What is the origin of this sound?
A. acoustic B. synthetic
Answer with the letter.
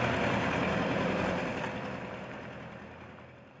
A